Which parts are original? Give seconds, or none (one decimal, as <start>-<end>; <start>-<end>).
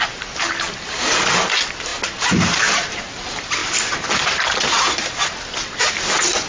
0.0-6.5